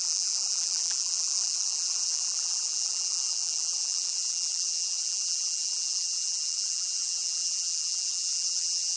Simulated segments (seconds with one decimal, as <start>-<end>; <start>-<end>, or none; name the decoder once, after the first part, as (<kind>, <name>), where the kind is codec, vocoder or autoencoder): 0.0-9.0 (vocoder, BigVGAN v2)